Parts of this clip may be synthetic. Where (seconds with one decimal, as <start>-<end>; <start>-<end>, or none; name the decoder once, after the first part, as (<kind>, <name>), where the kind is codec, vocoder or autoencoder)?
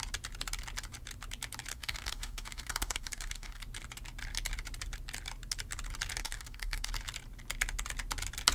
1.7-3.6 (codec, DAC); 6.2-6.9